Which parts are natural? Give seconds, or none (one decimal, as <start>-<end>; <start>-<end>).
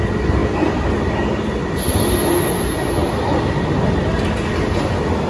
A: 0.0-5.3